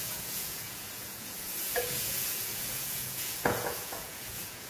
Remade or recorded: remade